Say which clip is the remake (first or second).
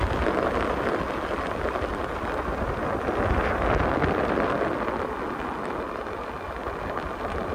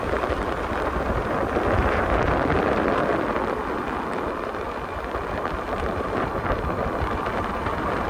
second